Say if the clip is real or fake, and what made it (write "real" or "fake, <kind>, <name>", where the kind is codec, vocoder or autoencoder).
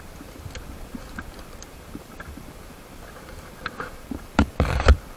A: fake, vocoder, BigVGAN v2